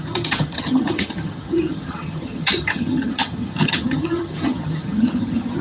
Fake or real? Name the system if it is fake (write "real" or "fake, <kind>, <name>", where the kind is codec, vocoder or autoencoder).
fake, vocoder, HiFi-GAN